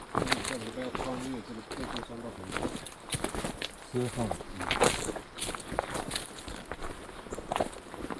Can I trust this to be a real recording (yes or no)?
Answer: yes